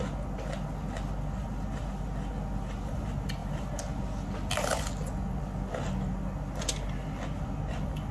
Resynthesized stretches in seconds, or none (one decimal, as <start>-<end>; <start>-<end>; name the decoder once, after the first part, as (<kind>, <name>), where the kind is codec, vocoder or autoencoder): none